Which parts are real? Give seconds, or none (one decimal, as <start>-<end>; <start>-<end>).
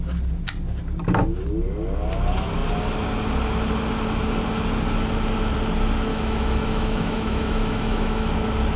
0.0-6.1; 8.3-8.8